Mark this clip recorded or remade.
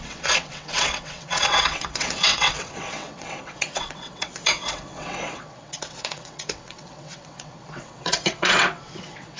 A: remade